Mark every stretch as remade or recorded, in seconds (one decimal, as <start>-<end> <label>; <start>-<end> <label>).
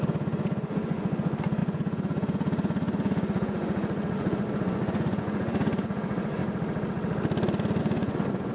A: 0.0-6.4 remade; 6.4-7.8 recorded; 7.8-8.5 remade